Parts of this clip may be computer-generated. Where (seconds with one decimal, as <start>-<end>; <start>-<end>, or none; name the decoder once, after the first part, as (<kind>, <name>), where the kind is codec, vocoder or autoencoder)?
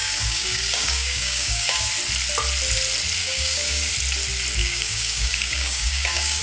0.0-1.9 (codec, DAC); 3.2-3.9; 4.6-6.4